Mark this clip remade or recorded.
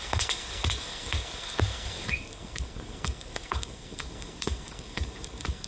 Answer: remade